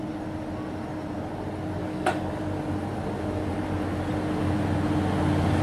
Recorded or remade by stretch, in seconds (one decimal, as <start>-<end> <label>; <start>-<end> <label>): 0.0-1.8 recorded; 1.8-2.4 remade; 2.4-5.6 recorded